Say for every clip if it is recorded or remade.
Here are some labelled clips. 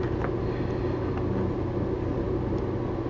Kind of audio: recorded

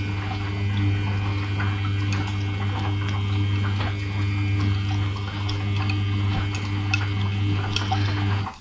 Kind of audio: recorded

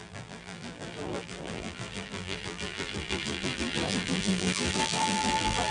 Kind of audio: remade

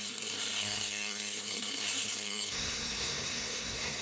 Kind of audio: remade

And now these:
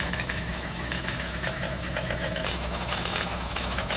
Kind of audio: remade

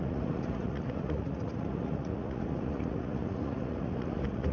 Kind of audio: remade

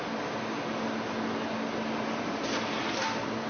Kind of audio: recorded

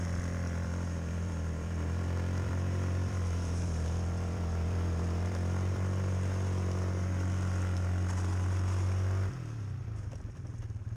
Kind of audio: remade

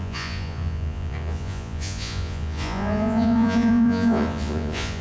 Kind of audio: remade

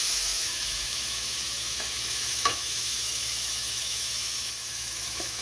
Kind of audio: remade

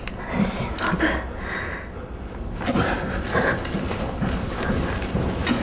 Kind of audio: recorded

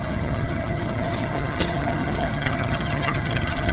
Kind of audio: remade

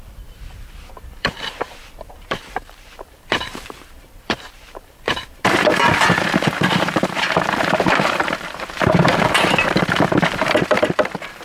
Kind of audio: remade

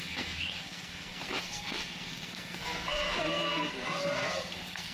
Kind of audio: remade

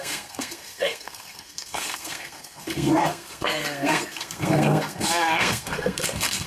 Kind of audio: remade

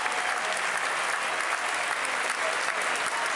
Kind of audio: recorded